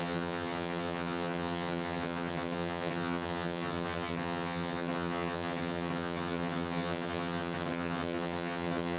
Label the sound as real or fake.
fake